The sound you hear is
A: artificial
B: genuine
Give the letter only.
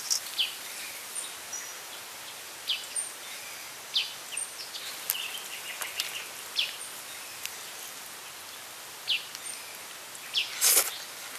B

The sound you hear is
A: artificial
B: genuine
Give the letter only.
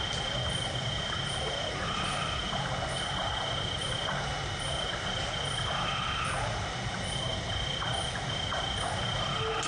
B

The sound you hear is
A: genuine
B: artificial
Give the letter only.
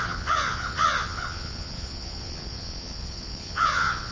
B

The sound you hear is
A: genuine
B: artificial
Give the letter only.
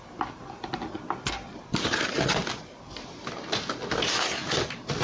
A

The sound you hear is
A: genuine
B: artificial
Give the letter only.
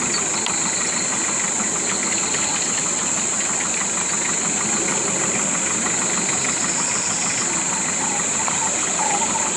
A